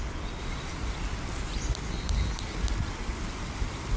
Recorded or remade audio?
recorded